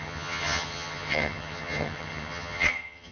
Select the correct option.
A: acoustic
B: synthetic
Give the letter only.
B